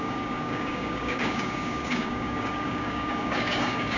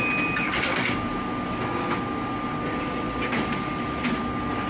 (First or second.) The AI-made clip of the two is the first